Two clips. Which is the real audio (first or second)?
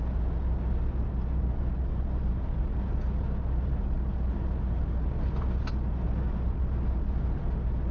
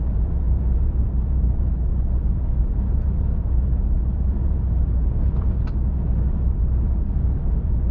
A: first